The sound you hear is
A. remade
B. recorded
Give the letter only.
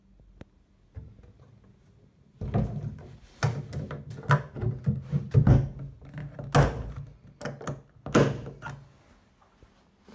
B